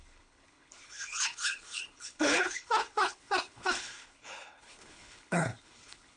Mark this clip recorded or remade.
remade